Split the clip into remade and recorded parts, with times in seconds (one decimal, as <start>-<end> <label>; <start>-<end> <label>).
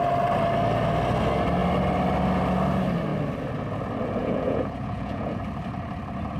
0.0-4.2 recorded; 4.2-5.4 remade; 5.4-6.4 recorded